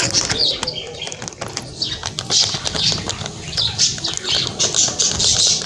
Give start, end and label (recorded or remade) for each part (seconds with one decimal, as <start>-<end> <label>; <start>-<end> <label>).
0.0-5.7 recorded